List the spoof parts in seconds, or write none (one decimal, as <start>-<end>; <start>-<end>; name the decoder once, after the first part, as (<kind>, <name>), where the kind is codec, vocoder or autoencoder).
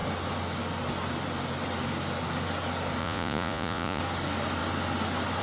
3.0-4.0 (vocoder, Vocos)